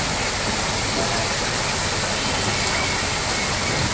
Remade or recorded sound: recorded